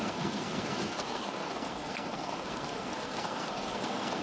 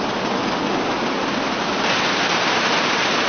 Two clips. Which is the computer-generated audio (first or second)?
first